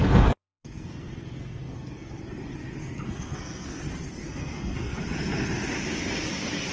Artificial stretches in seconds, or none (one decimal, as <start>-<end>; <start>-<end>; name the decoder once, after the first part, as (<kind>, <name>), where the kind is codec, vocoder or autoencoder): 0.0-2.2 (codec, SNAC); 2.8-3.8; 4.2-5.0

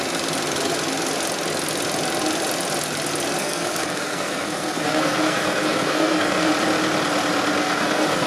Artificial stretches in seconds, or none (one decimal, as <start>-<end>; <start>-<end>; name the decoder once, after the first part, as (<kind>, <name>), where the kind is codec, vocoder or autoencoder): 3.4-6.5 (codec, SNAC); 7.6-8.3

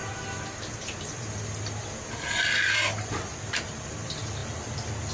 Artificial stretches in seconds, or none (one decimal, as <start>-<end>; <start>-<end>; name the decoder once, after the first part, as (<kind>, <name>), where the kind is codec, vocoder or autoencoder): none